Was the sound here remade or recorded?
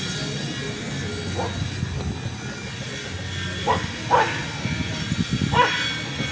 recorded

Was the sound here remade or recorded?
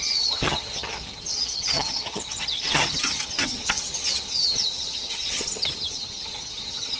remade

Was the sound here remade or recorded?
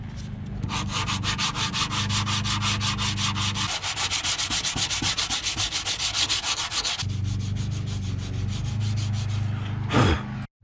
recorded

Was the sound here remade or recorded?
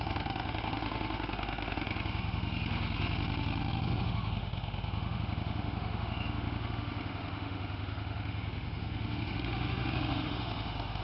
remade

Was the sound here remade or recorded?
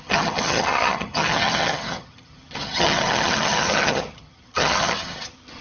remade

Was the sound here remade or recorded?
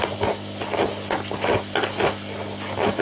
recorded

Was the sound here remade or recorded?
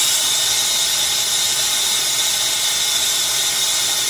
recorded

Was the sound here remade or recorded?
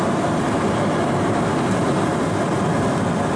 recorded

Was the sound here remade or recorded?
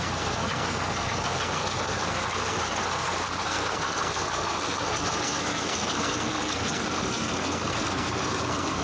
remade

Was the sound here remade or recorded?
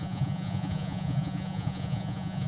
remade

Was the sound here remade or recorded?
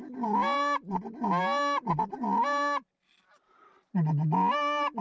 recorded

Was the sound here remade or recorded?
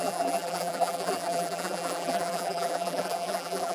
remade